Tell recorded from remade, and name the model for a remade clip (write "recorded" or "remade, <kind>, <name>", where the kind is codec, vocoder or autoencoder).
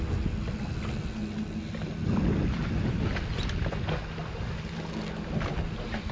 recorded